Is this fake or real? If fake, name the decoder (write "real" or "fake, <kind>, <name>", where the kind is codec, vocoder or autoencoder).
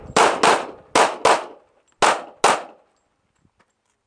real